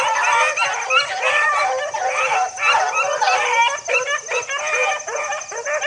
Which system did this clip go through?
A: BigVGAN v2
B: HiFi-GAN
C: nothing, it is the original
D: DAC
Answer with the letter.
C